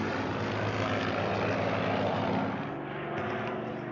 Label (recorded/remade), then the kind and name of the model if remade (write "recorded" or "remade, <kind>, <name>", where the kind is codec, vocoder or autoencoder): recorded